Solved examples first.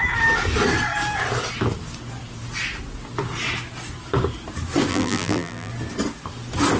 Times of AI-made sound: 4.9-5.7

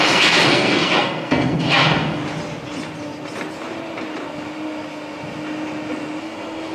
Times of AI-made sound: 0.0-2.2; 6.2-6.7

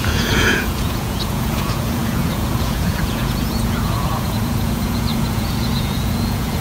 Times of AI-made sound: 0.0-6.6

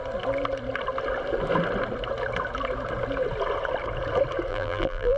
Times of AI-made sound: 4.5-5.2

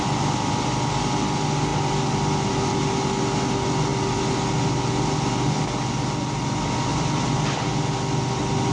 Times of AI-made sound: 6.9-7.7